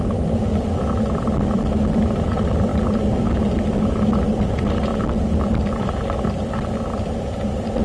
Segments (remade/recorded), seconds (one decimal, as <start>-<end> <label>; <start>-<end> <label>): 0.0-7.8 recorded